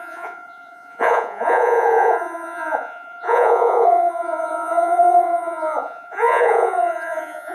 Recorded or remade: remade